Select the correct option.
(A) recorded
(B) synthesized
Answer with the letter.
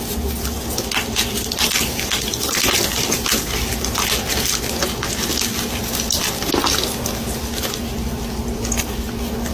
A